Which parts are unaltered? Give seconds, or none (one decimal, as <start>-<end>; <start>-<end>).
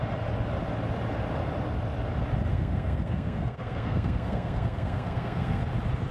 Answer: 0.0-2.5; 5.6-6.1